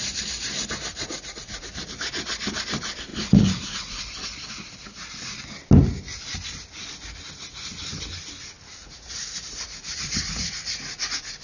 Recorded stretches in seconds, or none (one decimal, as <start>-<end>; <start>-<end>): 0.0-0.9; 1.7-3.1; 4.0-8.8